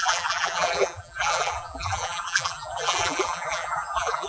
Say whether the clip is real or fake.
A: fake